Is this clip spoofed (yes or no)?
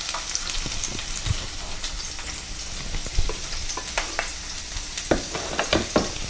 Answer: no